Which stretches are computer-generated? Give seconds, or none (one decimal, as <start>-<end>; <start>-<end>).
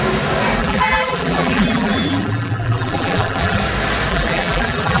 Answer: 0.6-3.6; 4.1-5.0